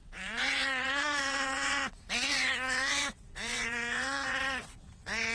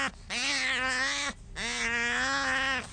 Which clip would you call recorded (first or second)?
second